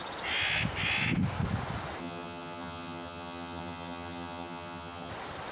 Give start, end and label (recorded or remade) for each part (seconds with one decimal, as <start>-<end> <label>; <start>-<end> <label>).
0.0-2.0 recorded; 2.0-5.1 remade; 5.1-5.5 recorded